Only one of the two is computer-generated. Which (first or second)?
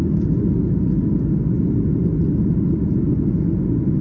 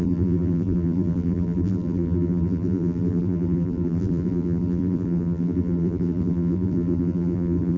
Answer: second